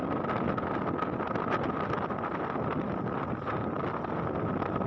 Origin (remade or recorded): recorded